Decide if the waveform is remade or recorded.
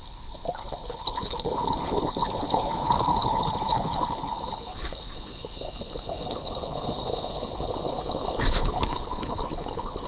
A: remade